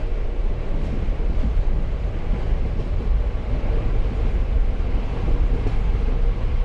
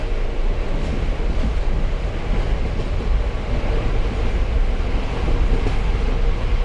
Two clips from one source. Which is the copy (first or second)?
first